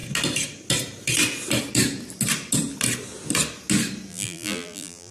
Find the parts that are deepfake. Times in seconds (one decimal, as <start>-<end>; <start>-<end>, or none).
4.1-5.1